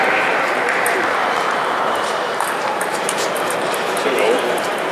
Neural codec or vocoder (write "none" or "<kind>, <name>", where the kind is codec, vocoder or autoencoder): vocoder, BigVGAN v2